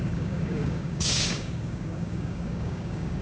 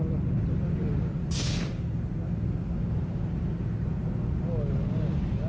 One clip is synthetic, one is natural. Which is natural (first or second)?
second